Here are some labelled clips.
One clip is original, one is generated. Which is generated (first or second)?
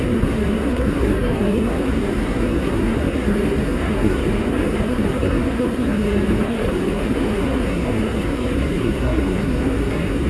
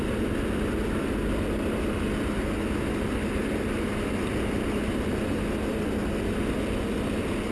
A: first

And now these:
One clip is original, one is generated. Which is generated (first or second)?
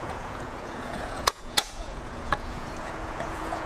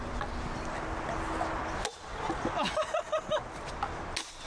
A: first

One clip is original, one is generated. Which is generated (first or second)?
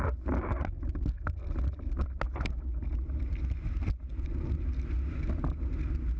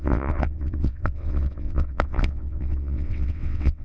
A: second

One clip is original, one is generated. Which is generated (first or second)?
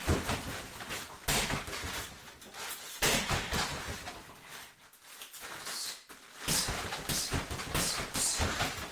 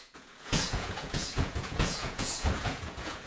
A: second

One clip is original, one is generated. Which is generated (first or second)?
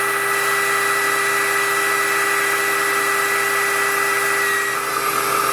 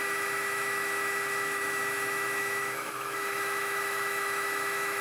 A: second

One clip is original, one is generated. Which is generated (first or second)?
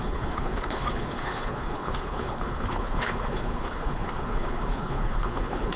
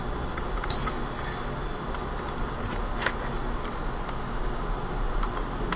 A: first